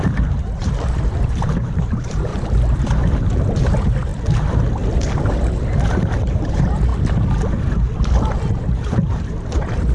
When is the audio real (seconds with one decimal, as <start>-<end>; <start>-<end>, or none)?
2.3-2.8; 4.1-5.1; 6.9-8.7